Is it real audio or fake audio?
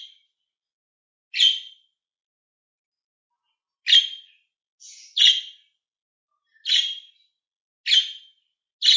real